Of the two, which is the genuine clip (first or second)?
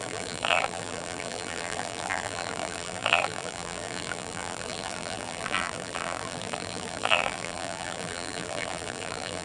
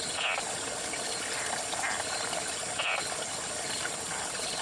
second